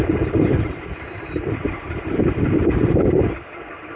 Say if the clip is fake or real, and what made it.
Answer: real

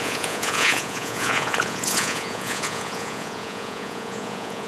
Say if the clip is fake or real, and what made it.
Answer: fake, vocoder, Vocos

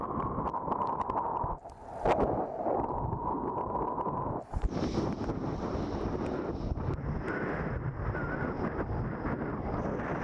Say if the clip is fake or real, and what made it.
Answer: real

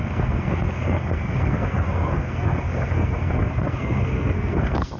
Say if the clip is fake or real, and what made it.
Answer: fake, codec, SNAC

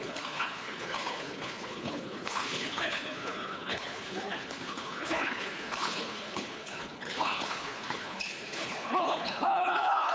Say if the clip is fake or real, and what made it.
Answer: fake, codec, HILCodec